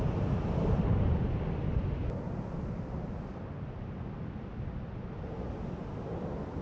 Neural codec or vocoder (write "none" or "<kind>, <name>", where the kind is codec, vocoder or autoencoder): none